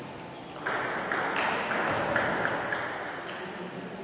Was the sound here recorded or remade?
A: recorded